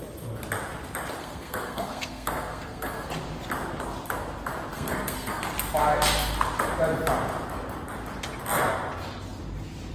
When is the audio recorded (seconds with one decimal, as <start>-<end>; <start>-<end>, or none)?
0.0-1.2; 3.1-4.7; 5.5-9.9

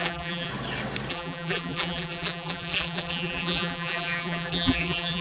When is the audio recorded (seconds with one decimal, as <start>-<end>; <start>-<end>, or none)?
0.5-1.1

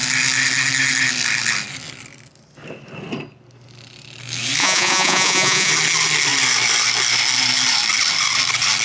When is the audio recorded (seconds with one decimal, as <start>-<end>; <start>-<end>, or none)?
0.0-4.6; 5.7-8.8

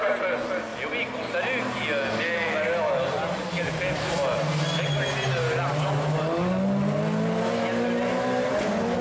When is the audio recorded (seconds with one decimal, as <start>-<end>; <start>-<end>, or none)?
0.0-9.0

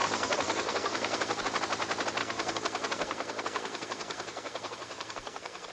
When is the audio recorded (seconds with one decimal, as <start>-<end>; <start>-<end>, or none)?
1.4-2.2

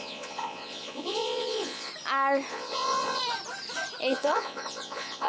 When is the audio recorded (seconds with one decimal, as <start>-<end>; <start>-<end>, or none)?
1.9-2.5; 3.2-4.1